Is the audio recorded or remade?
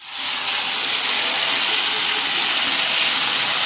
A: recorded